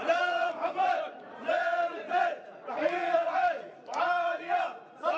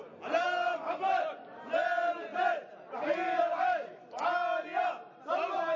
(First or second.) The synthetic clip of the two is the first